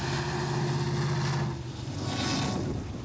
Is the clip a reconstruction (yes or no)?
no